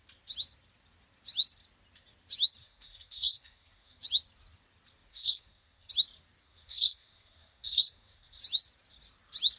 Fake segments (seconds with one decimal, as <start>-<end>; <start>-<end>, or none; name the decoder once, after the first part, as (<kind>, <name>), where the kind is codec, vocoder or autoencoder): 2.6-4.0 (codec, SNAC); 5.1-5.9; 6.4-8.4